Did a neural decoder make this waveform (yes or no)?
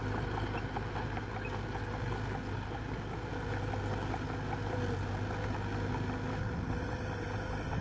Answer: no